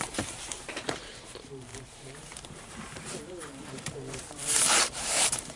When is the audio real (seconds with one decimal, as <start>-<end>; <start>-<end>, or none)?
none